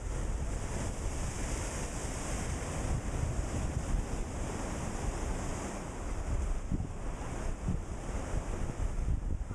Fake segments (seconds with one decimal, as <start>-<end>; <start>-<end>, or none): none